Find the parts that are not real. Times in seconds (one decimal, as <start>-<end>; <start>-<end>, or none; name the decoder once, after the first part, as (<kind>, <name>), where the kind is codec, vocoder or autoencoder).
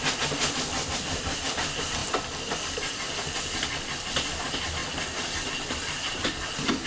0.0-2.0 (vocoder, BigVGAN v2); 2.6-4.8; 5.5-6.9